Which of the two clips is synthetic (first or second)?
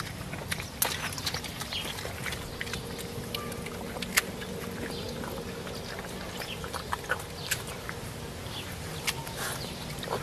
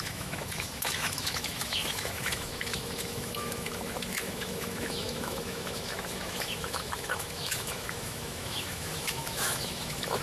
second